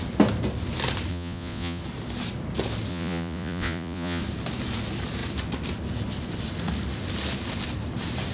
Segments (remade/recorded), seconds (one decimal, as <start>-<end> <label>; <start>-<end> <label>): 0.0-1.1 recorded; 1.1-1.8 remade; 1.8-2.9 recorded; 2.9-4.2 remade; 4.2-8.3 recorded